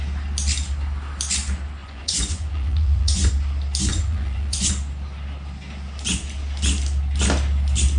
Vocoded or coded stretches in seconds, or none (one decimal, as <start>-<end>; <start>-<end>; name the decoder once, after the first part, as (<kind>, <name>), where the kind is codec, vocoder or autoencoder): 1.8-3.3 (vocoder, Vocos); 3.9-4.7